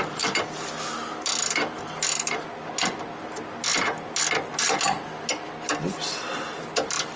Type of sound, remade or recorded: recorded